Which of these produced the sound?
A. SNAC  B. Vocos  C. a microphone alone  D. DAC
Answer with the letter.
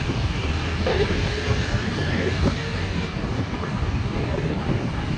D